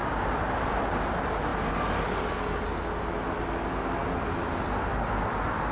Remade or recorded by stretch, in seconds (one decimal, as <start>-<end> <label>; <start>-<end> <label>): 0.0-0.8 remade; 0.8-5.7 recorded